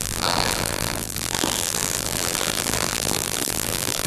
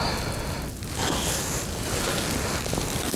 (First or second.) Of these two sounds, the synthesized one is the first